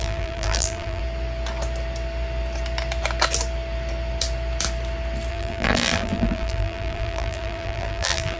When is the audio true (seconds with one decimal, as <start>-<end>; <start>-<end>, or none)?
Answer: 1.0-5.3